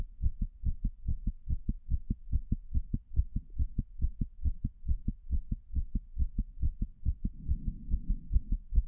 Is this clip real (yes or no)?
yes